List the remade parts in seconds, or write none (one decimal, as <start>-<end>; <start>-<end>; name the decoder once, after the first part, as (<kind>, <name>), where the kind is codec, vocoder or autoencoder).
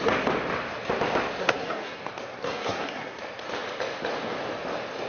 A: 1.4-2.0 (codec, SNAC); 2.4-3.2